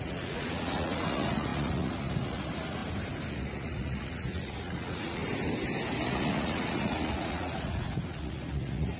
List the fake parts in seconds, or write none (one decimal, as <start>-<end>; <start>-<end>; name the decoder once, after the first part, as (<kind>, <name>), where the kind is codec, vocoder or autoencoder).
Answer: 0.0-2.8 (vocoder, Vocos); 3.3-5.2; 6.0-9.0